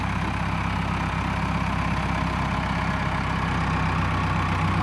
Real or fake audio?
real